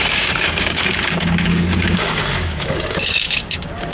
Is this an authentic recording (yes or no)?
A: no